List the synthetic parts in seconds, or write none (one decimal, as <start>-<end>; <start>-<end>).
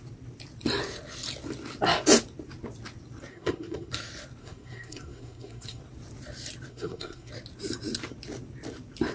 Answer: 3.3-3.9; 4.4-5.8; 6.7-7.3